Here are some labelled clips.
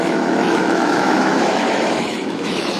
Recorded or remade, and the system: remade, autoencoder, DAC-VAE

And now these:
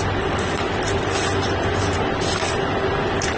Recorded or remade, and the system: recorded